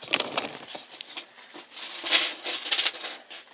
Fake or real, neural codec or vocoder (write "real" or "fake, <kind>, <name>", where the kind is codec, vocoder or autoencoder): real